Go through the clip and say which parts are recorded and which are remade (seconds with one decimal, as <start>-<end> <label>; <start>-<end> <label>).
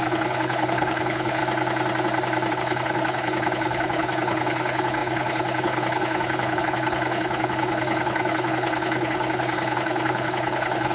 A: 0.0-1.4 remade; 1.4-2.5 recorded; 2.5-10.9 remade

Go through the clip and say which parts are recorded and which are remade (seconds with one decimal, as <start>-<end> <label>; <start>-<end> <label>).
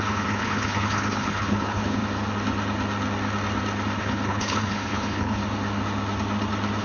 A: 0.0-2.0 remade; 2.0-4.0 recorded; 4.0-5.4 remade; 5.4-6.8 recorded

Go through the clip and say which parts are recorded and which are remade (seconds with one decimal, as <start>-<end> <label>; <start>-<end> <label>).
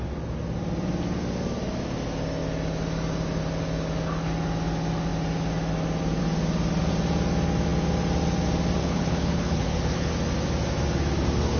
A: 0.0-8.8 recorded; 8.8-10.1 remade; 10.1-11.6 recorded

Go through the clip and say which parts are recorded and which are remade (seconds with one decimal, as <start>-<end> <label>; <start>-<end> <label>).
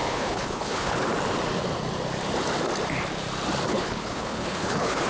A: 0.0-1.0 remade; 1.0-3.7 recorded; 3.7-5.1 remade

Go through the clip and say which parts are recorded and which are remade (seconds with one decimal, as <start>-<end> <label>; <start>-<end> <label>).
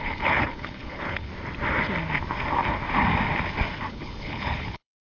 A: 0.0-1.3 remade; 1.3-3.9 recorded; 3.9-5.0 remade